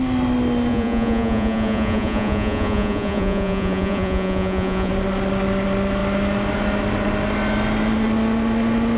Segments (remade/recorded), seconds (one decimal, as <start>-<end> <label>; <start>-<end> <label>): 0.0-0.7 recorded; 0.7-4.9 remade; 4.9-9.0 recorded